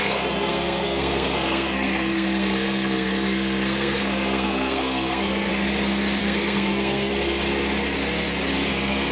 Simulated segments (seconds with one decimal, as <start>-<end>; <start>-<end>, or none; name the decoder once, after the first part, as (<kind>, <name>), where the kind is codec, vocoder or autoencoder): 0.0-5.5 (codec, SNAC); 6.2-7.1; 8.7-9.1